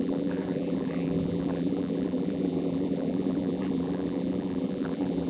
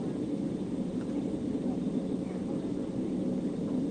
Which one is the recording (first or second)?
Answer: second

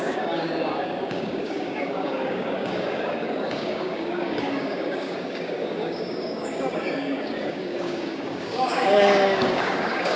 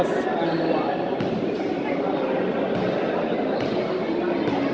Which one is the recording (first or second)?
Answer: second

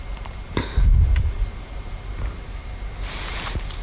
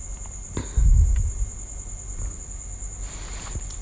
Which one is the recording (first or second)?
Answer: second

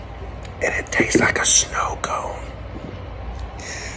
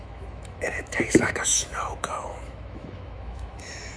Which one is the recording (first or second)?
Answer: first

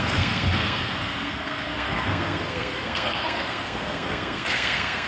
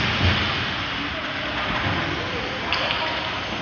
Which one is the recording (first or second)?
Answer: second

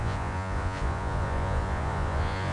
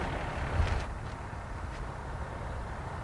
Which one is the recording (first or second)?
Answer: second